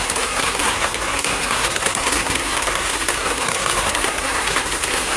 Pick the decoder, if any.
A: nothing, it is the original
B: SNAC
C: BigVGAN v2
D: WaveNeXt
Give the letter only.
B